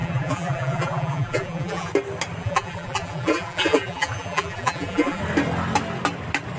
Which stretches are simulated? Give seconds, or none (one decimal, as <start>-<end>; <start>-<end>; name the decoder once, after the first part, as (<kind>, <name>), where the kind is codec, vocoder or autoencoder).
0.0-1.9 (vocoder, BigVGAN v2); 2.4-5.2